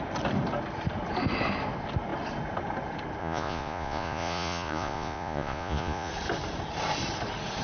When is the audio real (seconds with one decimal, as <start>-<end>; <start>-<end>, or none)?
0.0-3.2; 6.1-7.6